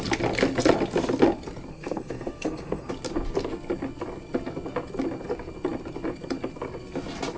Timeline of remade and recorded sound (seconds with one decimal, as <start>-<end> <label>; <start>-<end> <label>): 0.0-1.7 recorded; 1.7-2.9 remade; 2.9-7.4 recorded